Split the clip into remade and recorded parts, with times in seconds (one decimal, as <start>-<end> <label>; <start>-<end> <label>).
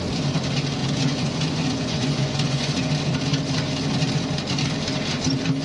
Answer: 0.0-0.8 recorded; 0.8-2.9 remade; 2.9-5.6 recorded